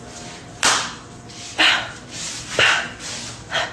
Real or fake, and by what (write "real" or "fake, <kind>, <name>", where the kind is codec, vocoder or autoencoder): fake, vocoder, BigVGAN v2